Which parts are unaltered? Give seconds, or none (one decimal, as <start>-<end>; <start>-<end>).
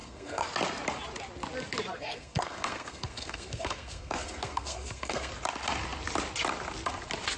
0.5-1.9; 5.3-7.4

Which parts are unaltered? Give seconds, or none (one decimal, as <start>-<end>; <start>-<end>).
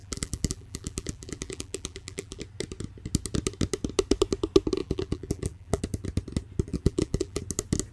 2.4-4.8; 5.8-6.7; 7.4-7.9